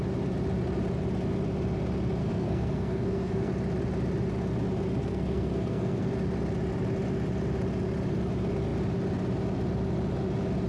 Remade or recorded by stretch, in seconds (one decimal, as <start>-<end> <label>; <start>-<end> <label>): 0.0-2.2 recorded; 2.2-3.5 remade; 3.5-5.0 recorded; 5.0-6.1 remade; 6.1-10.7 recorded